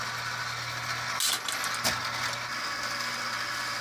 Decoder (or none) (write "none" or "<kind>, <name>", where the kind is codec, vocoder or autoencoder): none